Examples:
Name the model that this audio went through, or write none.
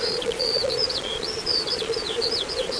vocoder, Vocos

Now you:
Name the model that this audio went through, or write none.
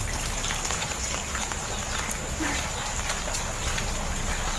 none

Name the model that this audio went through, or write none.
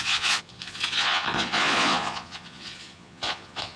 vocoder, Vocos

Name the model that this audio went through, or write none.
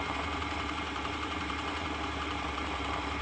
vocoder, BigVGAN v2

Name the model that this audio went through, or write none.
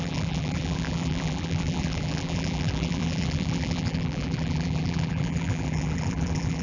vocoder, BigVGAN v2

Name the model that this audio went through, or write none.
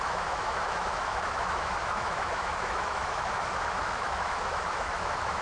autoencoder, DAC-VAE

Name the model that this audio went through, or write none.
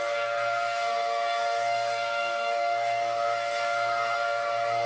codec, SNAC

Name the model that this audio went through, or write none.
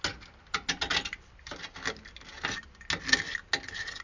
none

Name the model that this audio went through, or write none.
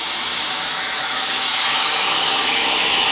autoencoder, DAC-VAE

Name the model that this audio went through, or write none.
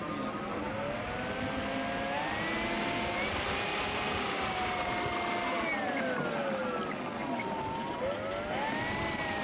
none